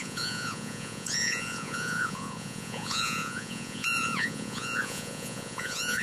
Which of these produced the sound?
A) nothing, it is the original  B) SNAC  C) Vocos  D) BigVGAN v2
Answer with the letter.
C